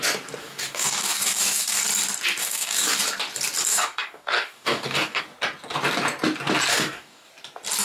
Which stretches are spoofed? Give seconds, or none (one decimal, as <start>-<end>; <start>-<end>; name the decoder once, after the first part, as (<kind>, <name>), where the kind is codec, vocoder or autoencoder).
0.4-1.8 (codec, DAC); 2.4-3.0; 3.7-5.2; 6.7-7.3